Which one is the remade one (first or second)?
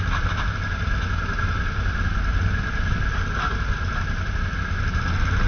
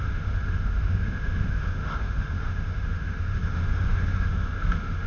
second